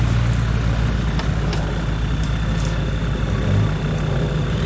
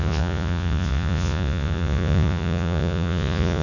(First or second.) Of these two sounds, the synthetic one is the second